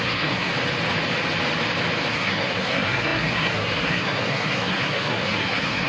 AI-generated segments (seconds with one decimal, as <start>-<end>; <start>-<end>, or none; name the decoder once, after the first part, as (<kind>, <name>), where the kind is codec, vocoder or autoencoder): 0.0-0.5 (codec, SNAC); 2.1-5.9